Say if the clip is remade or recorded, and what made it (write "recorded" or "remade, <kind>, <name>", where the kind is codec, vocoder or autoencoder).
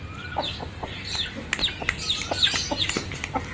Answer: recorded